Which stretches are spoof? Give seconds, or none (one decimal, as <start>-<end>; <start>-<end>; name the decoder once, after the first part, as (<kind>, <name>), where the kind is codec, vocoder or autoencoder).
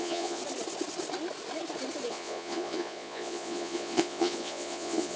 0.0-0.4 (vocoder, Vocos); 2.1-5.2